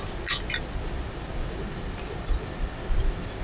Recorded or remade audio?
recorded